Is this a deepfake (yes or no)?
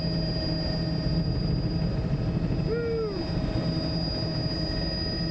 no